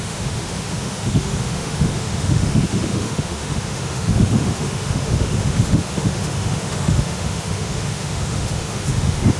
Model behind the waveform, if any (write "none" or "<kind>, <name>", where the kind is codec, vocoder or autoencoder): autoencoder, DAC-VAE